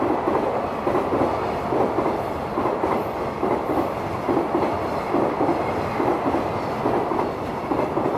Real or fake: fake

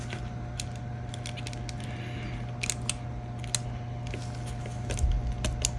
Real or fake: real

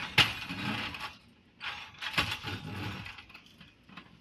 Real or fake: real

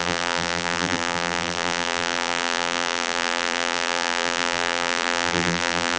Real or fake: fake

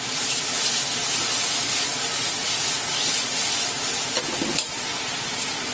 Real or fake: real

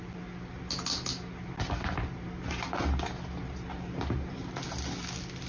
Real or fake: real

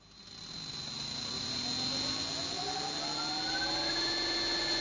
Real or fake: real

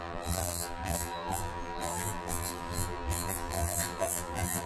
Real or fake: fake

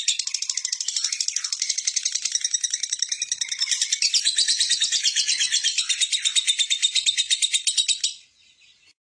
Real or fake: fake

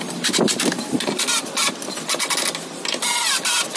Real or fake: real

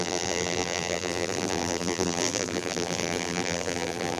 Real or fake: fake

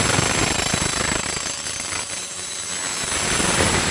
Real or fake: real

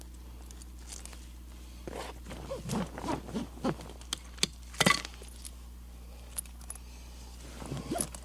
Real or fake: real